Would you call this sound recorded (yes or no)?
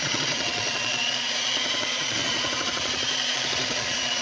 no